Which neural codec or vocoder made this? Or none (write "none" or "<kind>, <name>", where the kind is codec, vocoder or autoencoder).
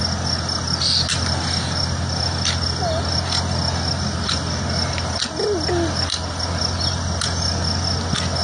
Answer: none